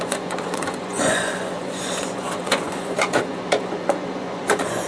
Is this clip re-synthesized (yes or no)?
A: yes